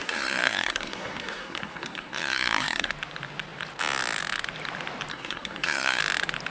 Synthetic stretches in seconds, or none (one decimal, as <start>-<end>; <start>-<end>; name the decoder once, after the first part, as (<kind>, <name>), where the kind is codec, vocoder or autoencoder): 0.0-2.9 (codec, SNAC); 5.1-6.0